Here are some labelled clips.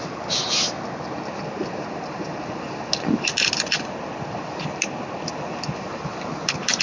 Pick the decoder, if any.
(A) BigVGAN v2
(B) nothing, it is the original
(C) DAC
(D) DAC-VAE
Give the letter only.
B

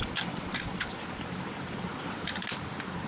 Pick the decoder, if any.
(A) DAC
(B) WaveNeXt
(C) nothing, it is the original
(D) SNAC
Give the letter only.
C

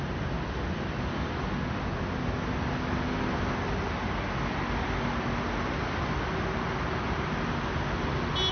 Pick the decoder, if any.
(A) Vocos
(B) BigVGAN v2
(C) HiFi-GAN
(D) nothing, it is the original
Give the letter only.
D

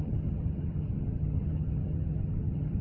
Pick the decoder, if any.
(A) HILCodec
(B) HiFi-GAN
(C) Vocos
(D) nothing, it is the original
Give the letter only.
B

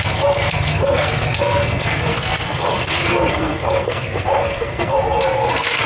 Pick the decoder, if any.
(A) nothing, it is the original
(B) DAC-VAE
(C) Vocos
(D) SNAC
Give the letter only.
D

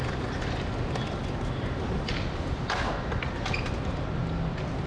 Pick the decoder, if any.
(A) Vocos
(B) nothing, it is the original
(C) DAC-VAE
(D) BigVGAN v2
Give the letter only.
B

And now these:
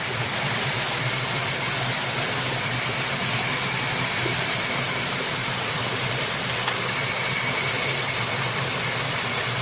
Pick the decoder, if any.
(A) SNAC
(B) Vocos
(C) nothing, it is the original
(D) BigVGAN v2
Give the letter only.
D